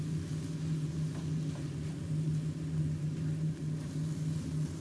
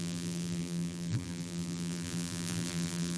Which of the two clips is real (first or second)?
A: first